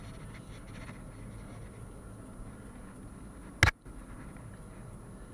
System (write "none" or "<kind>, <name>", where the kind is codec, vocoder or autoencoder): none